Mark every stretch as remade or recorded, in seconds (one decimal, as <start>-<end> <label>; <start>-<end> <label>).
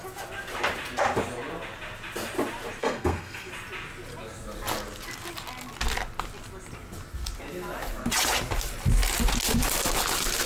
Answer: 0.0-2.8 recorded; 2.8-3.5 remade; 3.5-10.5 recorded